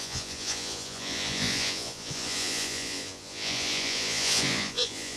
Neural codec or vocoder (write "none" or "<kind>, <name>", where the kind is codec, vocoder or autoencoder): vocoder, Vocos